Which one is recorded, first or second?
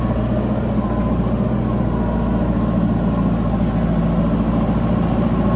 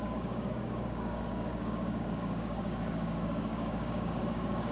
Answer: first